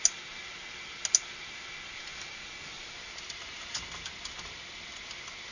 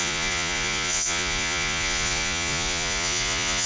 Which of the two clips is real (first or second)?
first